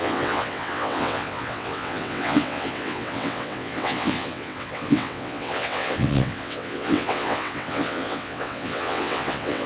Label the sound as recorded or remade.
remade